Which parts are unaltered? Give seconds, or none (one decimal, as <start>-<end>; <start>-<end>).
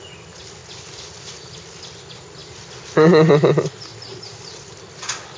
0.0-3.9; 4.7-5.4